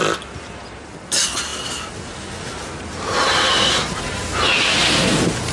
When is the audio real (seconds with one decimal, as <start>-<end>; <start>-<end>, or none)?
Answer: 0.0-5.5